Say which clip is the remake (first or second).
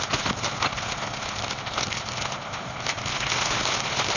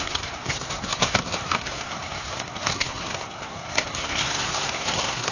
second